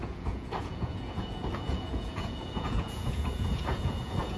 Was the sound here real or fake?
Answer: fake